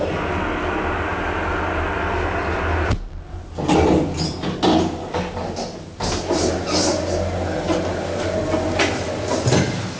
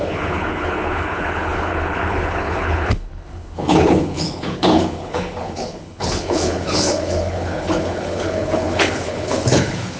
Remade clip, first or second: second